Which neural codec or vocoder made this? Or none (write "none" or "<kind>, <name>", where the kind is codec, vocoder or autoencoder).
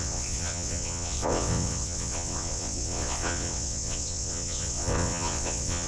vocoder, WaveNeXt